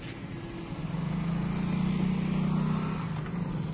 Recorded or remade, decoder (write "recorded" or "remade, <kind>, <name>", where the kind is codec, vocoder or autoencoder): recorded